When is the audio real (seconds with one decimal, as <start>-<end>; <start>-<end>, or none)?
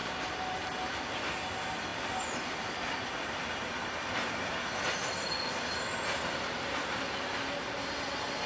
0.0-8.5